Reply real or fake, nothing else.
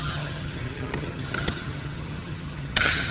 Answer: fake